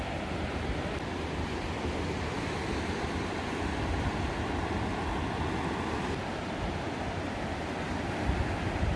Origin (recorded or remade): recorded